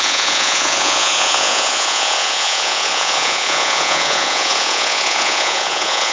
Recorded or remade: remade